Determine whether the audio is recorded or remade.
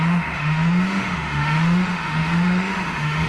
remade